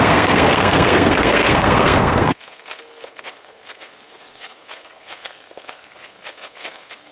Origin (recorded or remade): remade